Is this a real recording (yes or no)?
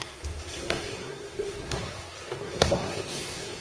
no